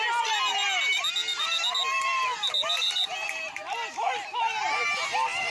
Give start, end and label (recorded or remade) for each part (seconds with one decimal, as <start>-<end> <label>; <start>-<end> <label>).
0.0-5.5 recorded